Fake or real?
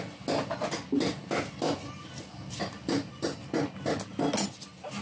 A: real